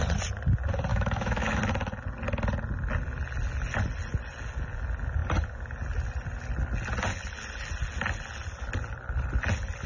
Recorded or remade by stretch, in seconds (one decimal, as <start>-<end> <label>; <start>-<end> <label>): 0.0-0.9 recorded; 0.9-1.6 remade; 1.6-9.9 recorded

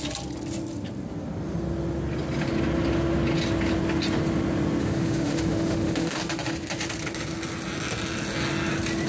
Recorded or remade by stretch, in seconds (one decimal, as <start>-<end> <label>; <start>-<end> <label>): 0.0-4.8 recorded; 4.8-6.2 remade; 6.2-9.1 recorded

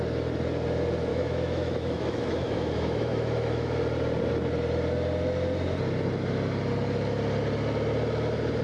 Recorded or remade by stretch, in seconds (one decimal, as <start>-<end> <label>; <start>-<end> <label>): 0.0-1.1 recorded; 1.1-3.8 remade; 3.8-8.6 recorded

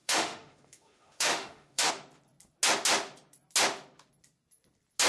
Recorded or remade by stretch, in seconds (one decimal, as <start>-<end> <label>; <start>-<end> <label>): 0.0-1.9 remade; 1.9-5.1 recorded

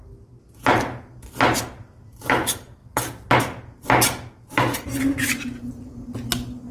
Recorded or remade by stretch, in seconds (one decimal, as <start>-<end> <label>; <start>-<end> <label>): 0.0-6.7 recorded

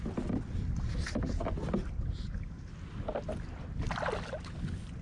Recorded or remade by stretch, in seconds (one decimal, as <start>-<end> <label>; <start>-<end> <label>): 0.0-5.0 recorded

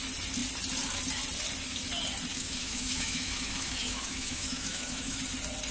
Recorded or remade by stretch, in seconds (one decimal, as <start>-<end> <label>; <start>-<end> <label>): 0.0-2.3 recorded; 2.3-5.2 remade; 5.2-5.7 recorded